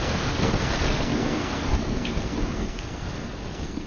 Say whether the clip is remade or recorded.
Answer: remade